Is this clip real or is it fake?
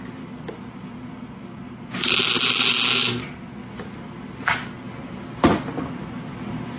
real